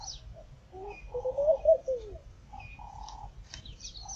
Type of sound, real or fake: real